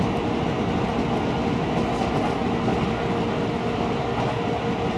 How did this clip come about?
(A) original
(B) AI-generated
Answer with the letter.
A